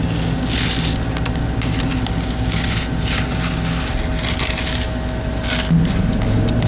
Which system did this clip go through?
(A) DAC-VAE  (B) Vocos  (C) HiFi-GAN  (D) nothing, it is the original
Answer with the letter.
D